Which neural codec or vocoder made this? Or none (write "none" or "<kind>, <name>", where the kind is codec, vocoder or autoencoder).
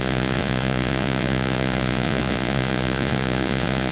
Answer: vocoder, Vocos